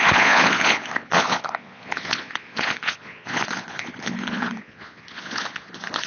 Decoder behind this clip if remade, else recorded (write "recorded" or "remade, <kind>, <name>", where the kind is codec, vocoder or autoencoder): remade, vocoder, Vocos